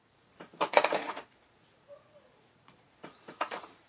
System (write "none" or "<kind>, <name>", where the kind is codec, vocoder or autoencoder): vocoder, Vocos